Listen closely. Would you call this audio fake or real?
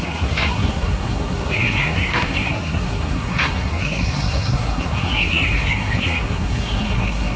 fake